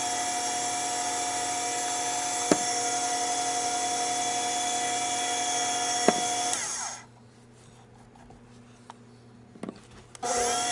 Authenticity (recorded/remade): recorded